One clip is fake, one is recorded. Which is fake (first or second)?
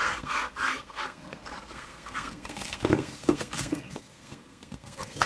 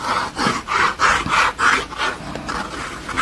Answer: first